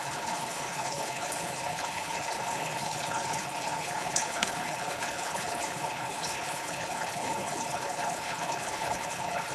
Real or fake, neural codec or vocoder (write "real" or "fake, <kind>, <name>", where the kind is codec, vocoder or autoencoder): fake, codec, HILCodec